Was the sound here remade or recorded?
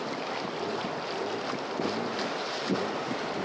recorded